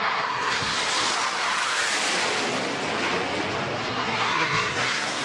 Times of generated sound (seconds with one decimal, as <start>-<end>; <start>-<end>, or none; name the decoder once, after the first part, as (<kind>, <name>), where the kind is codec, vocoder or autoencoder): 0.0-0.8 (codec, SNAC); 3.9-5.2